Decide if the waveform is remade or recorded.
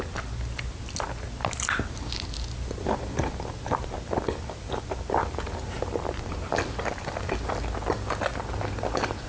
recorded